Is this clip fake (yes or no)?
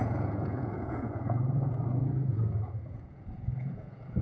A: yes